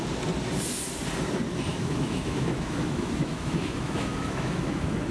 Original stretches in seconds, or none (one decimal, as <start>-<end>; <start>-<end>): 0.0-1.7